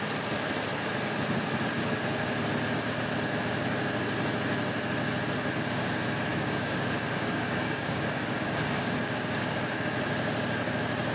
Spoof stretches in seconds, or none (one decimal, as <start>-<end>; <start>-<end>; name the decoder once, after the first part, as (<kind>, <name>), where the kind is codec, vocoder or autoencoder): 6.3-9.8 (codec, DAC)